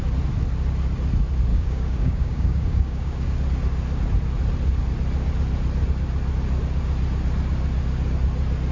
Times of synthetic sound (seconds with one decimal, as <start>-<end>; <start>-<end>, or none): 1.5-3.4